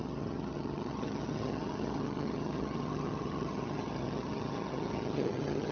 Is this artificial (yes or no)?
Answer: yes